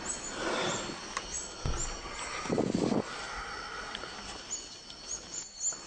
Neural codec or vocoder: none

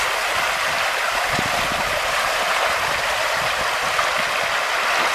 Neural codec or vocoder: none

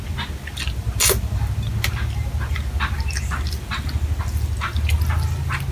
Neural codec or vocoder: none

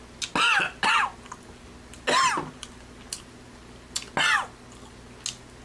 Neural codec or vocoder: none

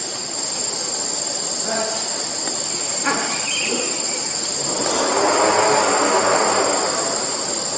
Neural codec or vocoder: none